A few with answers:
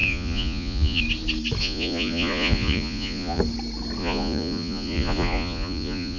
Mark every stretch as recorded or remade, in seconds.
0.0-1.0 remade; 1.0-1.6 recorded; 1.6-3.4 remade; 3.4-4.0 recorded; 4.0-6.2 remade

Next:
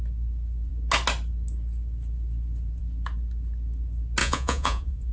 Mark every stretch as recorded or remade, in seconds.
0.0-4.2 recorded; 4.2-5.1 remade

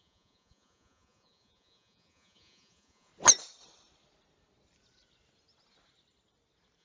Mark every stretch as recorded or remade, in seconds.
0.0-3.1 remade; 3.1-6.8 recorded